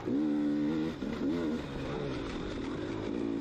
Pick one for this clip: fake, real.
real